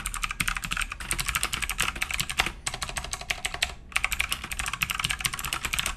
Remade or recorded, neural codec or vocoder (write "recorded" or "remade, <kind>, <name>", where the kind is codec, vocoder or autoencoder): recorded